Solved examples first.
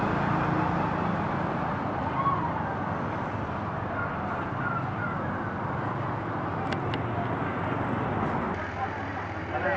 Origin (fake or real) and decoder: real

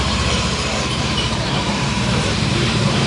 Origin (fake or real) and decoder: fake, vocoder, BigVGAN v2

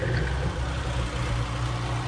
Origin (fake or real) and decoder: real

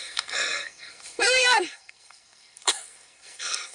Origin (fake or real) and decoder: fake, codec, SNAC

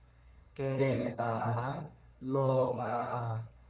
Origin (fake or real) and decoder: fake, codec, SNAC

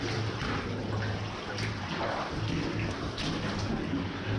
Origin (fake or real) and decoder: real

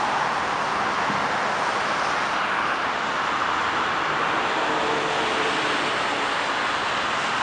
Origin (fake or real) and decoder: real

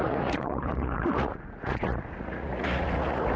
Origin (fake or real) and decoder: fake, vocoder, Vocos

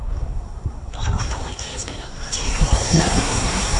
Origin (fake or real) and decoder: fake, codec, SNAC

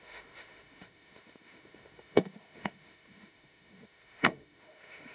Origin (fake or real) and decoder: fake, autoencoder, DAC-VAE